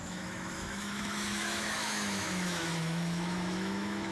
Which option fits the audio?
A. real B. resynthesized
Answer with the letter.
B